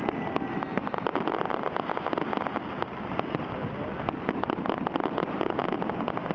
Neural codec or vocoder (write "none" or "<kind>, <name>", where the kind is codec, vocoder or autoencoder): none